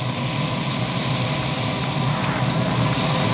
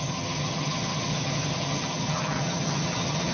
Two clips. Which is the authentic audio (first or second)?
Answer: first